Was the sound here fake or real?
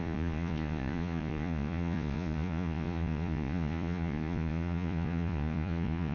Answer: fake